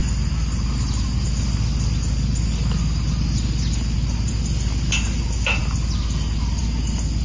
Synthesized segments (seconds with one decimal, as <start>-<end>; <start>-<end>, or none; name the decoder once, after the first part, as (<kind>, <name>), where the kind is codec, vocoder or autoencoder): none